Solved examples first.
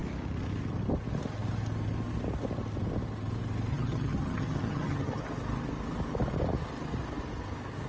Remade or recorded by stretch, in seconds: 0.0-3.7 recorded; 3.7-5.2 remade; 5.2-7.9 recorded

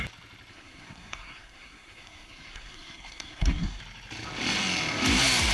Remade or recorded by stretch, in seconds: 0.0-0.5 recorded; 0.5-3.8 remade; 3.8-5.5 recorded

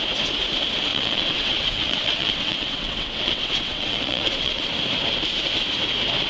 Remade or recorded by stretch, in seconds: 0.0-0.9 recorded; 0.9-4.7 remade; 4.7-6.3 recorded

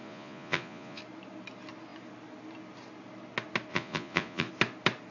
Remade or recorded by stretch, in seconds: 0.0-1.0 remade; 1.0-3.7 recorded; 3.7-4.5 remade; 4.5-5.1 recorded